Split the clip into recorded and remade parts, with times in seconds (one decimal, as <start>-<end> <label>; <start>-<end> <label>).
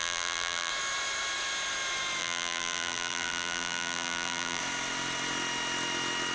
0.0-0.7 remade; 0.7-2.2 recorded; 2.2-4.6 remade; 4.6-6.3 recorded